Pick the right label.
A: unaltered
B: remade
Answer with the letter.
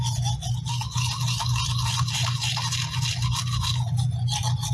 A